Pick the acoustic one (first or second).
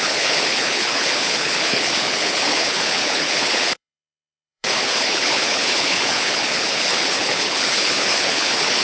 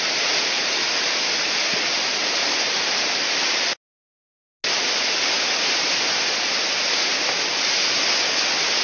second